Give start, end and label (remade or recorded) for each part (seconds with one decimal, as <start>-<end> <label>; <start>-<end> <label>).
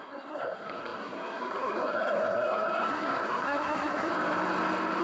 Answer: 0.0-4.1 remade; 4.1-5.0 recorded